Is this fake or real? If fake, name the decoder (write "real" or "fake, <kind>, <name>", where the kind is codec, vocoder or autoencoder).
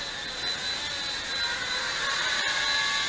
real